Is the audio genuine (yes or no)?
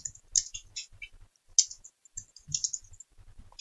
yes